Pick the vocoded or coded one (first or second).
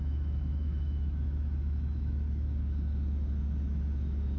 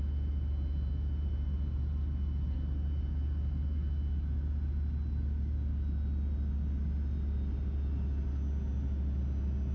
first